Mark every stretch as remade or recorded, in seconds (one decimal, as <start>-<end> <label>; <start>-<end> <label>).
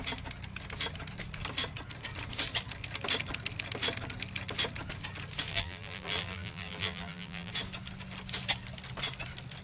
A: 0.0-5.5 recorded; 5.5-7.5 remade; 7.5-9.6 recorded